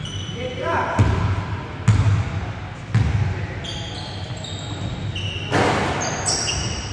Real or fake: real